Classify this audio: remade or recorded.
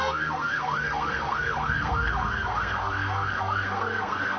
remade